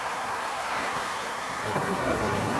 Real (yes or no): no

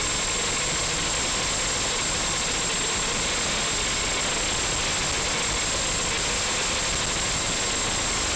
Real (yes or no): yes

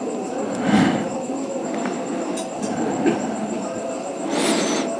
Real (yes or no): yes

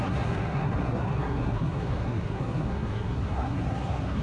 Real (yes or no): no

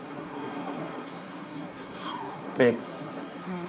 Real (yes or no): no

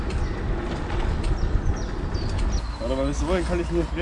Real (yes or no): yes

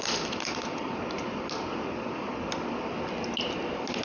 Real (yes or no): yes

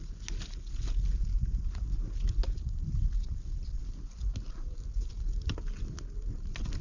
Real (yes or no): yes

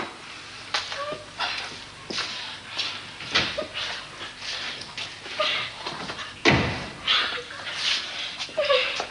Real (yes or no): yes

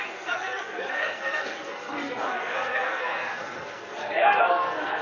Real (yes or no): no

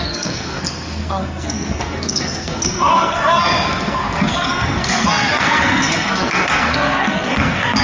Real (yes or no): no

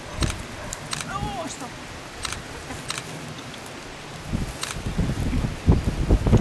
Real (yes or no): yes